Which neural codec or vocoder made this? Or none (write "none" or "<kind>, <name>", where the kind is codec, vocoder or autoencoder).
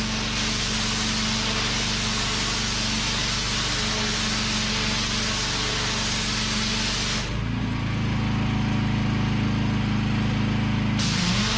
none